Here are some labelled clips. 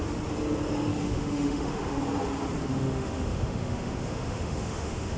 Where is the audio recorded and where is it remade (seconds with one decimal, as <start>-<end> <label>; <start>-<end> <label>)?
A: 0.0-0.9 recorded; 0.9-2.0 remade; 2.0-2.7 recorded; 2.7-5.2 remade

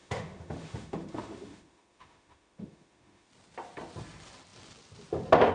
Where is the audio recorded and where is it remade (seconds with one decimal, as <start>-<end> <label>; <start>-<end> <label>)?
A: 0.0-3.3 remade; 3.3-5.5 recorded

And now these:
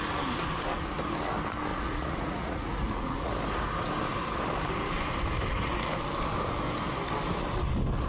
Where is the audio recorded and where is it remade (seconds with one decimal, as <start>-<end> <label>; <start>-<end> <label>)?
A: 0.0-1.7 recorded; 1.7-3.3 remade; 3.3-8.1 recorded

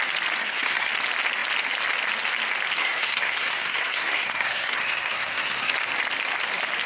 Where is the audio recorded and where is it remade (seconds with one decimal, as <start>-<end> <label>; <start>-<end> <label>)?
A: 0.0-0.4 recorded; 0.4-0.9 remade; 0.9-2.8 recorded; 2.8-5.7 remade; 5.7-6.9 recorded

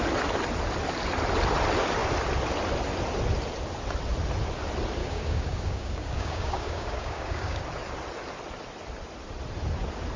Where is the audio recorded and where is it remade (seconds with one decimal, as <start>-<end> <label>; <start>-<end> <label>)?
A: 0.0-5.0 recorded; 5.0-7.6 remade; 7.6-10.2 recorded